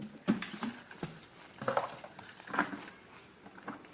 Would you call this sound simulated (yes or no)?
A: no